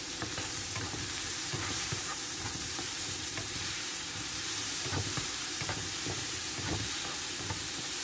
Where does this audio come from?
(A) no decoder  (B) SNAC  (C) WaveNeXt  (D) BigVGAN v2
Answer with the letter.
D